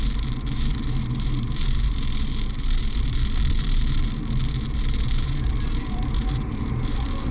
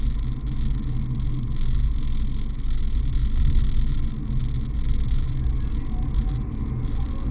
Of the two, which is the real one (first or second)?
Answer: second